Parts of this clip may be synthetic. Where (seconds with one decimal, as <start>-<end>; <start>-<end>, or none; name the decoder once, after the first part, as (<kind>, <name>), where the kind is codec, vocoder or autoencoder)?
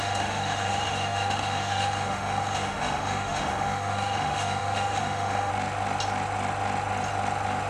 0.0-5.5 (autoencoder, DAC-VAE)